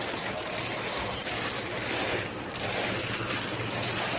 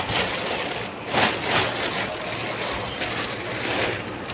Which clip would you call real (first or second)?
second